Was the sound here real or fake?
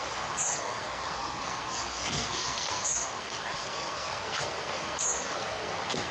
fake